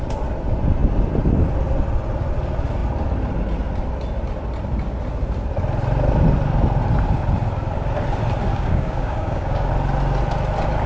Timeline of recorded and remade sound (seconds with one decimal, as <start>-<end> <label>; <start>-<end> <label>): 0.0-8.5 recorded; 8.5-9.7 remade; 9.7-10.9 recorded